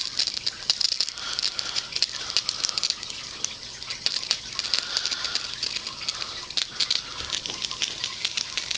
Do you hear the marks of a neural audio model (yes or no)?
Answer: no